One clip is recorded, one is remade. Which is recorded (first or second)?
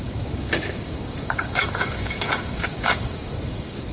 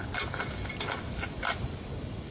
second